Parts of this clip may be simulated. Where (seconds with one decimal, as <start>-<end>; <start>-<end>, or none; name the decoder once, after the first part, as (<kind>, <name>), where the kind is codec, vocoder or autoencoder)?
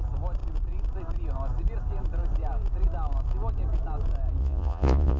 4.4-5.2 (vocoder, Vocos)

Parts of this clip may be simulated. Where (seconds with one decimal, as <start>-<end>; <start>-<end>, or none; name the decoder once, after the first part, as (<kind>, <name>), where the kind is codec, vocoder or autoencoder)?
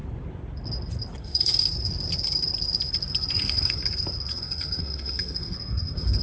1.2-1.7 (codec, SNAC); 3.4-3.8; 4.3-6.2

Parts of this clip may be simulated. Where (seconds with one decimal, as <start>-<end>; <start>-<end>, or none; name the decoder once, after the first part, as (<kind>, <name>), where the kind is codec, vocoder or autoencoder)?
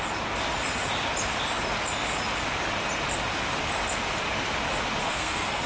5.0-5.7 (codec, SNAC)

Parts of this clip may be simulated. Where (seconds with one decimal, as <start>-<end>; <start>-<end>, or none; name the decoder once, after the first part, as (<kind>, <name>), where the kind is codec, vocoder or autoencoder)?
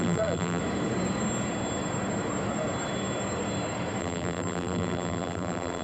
0.0-0.6 (vocoder, BigVGAN v2); 4.0-5.8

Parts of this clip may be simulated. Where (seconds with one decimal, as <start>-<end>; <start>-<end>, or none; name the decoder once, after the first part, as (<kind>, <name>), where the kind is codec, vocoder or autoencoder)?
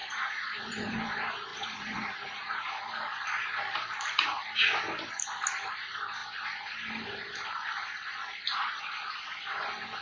0.0-1.0 (vocoder, Vocos); 1.5-2.4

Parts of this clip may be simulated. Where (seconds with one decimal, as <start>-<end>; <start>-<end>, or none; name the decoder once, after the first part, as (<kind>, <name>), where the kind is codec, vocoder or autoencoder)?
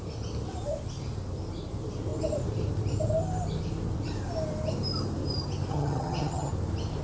5.7-6.5 (vocoder, HiFi-GAN)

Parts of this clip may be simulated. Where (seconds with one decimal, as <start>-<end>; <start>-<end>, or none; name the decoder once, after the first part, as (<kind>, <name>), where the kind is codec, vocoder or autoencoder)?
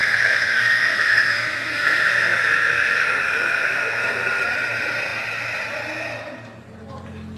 0.0-4.4 (codec, SNAC)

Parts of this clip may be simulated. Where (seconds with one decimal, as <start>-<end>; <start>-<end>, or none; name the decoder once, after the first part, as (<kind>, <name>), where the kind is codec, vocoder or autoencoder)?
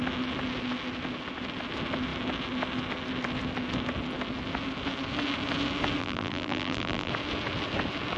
6.0-7.1 (vocoder, BigVGAN v2)